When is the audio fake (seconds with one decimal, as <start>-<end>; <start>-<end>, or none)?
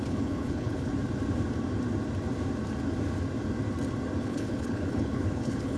0.0-0.9; 4.2-5.8